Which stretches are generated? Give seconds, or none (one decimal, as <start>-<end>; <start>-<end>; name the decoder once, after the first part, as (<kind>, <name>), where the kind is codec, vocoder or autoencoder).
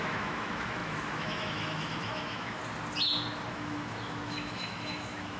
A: 0.0-2.6 (autoencoder, DAC-VAE); 3.5-5.4